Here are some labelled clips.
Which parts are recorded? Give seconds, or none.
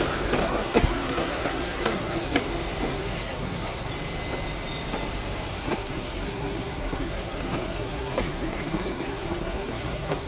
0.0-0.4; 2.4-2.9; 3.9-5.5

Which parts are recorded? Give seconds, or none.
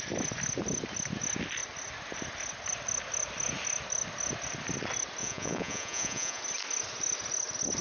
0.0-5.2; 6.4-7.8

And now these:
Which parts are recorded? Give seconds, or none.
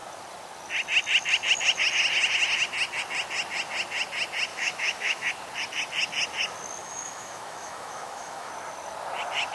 0.0-4.5; 5.3-6.8; 8.5-9.5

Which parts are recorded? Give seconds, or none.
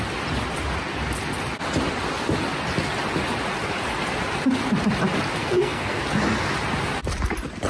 0.0-5.4; 6.0-7.7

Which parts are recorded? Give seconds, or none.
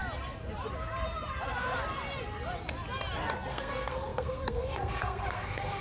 0.0-3.5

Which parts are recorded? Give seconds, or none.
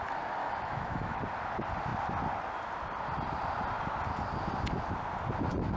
0.0-0.4; 1.2-5.8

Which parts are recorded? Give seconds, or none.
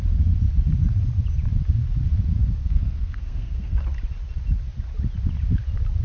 0.0-2.6; 3.8-6.0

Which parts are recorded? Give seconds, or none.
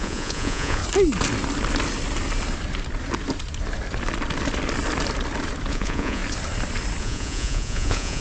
0.8-5.7; 6.2-7.0